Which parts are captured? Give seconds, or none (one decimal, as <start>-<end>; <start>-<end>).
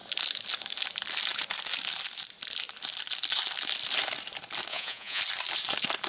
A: 0.0-4.7; 5.2-6.1